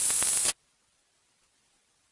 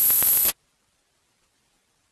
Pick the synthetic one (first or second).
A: first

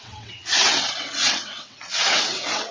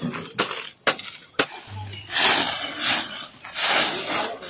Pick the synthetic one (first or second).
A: first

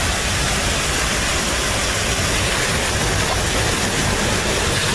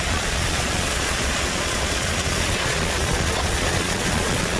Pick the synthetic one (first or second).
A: second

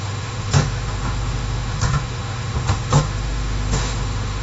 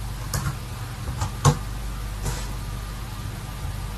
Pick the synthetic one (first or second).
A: first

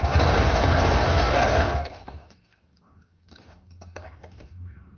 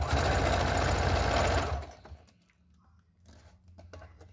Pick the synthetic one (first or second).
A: first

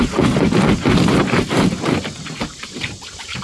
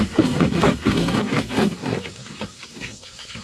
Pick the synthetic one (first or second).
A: second